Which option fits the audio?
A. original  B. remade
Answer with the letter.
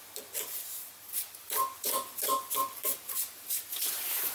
A